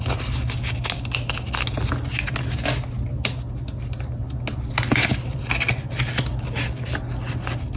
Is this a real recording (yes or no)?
yes